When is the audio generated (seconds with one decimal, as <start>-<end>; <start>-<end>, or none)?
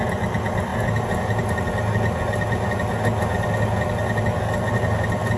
none